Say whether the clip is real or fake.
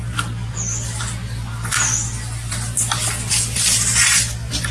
real